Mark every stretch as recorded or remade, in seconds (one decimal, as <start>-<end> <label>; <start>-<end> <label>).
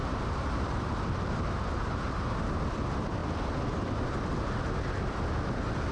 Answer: 0.0-1.8 remade; 1.8-5.9 recorded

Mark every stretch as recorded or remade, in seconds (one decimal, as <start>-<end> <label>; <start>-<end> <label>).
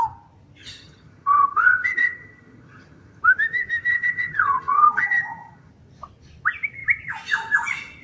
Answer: 0.0-0.6 recorded; 0.6-3.2 remade; 3.2-3.9 recorded; 3.9-5.7 remade; 5.7-8.0 recorded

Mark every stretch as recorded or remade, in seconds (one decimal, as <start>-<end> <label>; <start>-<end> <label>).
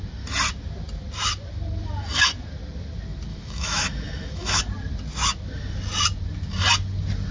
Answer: 0.0-3.3 recorded; 3.3-4.6 remade; 4.6-7.3 recorded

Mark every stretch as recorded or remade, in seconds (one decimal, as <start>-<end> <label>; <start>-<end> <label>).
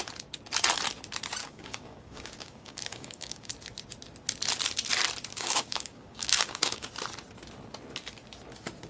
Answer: 0.0-1.4 recorded; 1.4-3.5 remade; 3.5-5.3 recorded; 5.3-6.9 remade; 6.9-8.9 recorded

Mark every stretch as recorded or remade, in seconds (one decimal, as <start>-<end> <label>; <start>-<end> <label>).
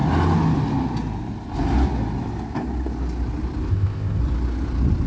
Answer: 0.0-3.7 recorded; 3.7-4.2 remade; 4.2-5.1 recorded